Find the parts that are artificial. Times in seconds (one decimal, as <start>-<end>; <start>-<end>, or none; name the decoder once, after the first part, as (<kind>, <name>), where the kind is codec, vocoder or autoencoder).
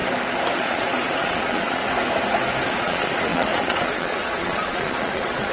0.5-1.8 (vocoder, Vocos); 2.7-5.5